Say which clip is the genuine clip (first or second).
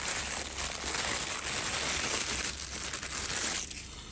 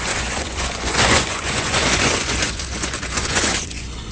first